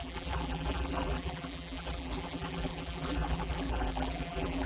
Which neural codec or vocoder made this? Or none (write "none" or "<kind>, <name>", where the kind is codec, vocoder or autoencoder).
vocoder, BigVGAN v2